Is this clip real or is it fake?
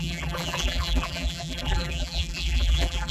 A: fake